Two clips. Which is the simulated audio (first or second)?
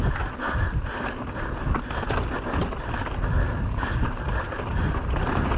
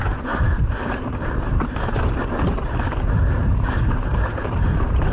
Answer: second